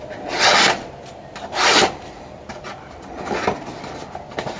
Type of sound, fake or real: real